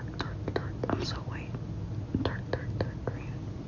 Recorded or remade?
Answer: recorded